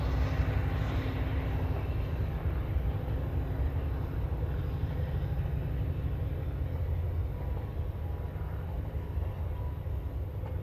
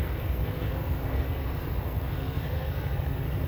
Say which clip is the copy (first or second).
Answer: second